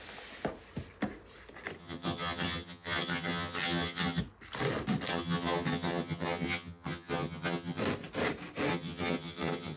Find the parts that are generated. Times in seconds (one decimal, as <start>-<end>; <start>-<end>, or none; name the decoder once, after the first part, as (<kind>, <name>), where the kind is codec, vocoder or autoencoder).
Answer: 1.8-4.2 (vocoder, HiFi-GAN); 5.1-7.8; 8.7-9.8